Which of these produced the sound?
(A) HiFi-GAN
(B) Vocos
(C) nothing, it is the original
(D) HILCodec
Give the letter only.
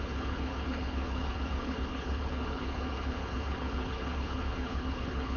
D